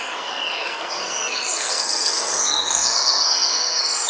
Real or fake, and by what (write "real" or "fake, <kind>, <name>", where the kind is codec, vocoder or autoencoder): fake, codec, SNAC